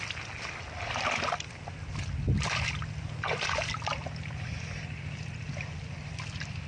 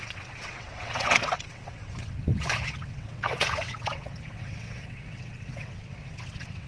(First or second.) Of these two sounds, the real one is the first